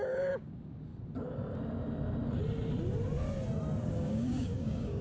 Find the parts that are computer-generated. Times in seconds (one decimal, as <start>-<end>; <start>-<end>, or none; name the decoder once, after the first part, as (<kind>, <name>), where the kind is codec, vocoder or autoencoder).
0.0-0.9 (codec, DAC); 3.9-5.0

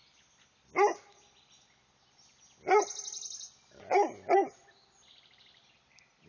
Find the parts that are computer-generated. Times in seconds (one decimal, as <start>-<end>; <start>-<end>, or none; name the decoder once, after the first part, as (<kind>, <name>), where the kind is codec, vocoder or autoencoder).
none

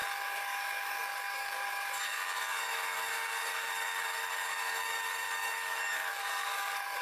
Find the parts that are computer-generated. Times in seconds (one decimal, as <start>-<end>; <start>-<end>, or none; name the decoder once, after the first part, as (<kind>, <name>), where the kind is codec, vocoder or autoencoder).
0.0-7.0 (codec, DAC)

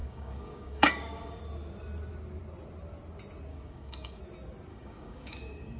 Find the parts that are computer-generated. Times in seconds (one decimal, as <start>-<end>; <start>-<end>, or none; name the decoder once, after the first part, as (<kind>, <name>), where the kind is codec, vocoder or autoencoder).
0.0-1.4 (codec, DAC); 3.5-4.2; 4.7-5.8

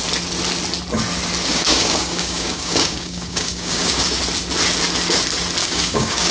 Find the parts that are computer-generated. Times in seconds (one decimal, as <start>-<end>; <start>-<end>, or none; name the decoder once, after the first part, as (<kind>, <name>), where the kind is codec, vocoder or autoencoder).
1.5-4.2 (codec, DAC); 5.6-6.3

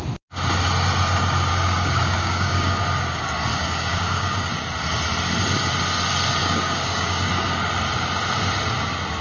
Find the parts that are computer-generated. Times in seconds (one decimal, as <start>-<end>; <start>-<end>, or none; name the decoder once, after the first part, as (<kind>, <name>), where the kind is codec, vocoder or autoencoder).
1.5-2.8 (codec, DAC); 3.5-4.5; 6.4-7.7

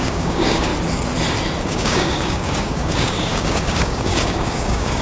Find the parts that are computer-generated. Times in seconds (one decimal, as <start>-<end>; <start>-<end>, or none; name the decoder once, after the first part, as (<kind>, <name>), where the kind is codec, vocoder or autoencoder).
0.0-0.7 (codec, DAC); 1.6-5.0